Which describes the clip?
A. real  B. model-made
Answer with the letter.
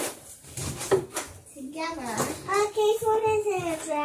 A